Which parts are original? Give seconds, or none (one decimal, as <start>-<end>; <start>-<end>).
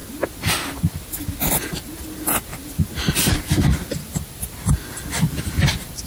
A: 0.0-1.5